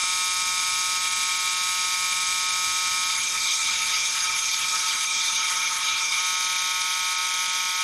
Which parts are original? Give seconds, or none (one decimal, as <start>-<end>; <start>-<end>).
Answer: 0.0-3.1; 6.2-7.8